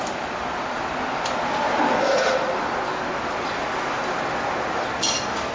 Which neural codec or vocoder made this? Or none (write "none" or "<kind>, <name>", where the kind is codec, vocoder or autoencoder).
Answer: none